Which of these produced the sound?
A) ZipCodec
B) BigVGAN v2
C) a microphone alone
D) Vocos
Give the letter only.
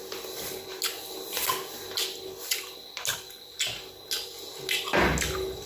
C